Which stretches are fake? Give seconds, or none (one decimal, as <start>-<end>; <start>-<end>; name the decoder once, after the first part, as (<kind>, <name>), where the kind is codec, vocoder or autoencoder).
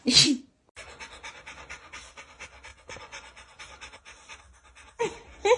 2.7-3.6 (vocoder, Vocos)